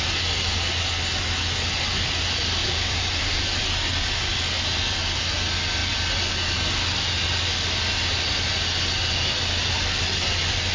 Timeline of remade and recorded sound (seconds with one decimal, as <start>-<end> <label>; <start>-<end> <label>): 0.0-2.6 recorded; 2.6-3.6 remade; 3.6-10.7 recorded